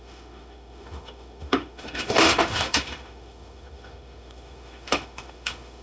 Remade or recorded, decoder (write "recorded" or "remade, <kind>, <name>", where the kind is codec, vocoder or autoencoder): remade, autoencoder, DAC-VAE